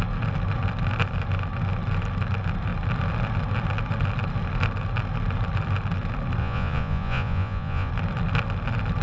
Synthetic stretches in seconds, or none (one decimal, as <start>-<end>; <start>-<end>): 6.4-7.9